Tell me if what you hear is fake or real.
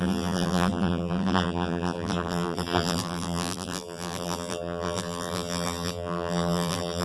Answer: fake